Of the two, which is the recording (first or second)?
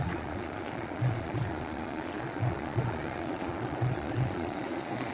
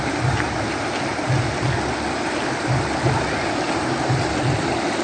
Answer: second